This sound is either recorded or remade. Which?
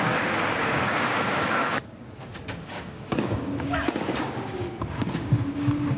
remade